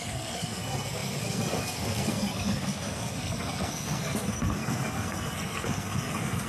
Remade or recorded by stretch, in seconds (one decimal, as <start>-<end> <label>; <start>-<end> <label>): 0.0-6.5 remade